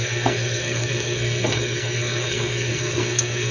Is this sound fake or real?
fake